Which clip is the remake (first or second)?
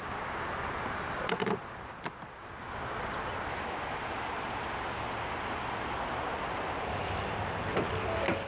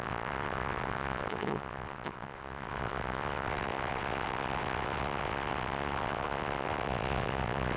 second